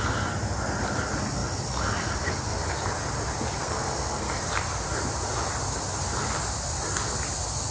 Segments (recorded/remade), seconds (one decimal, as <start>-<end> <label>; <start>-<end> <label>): 0.0-3.6 recorded; 3.6-4.4 remade; 4.4-7.7 recorded